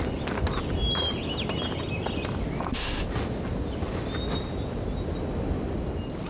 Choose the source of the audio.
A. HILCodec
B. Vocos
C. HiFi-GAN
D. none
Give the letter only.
D